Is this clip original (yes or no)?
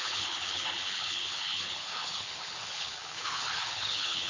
no